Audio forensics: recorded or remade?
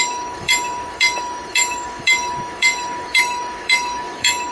remade